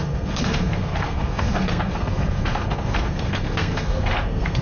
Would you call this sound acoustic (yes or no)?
no